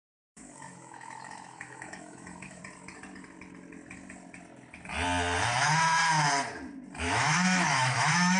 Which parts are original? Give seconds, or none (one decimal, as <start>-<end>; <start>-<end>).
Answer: 2.6-5.6; 6.0-7.0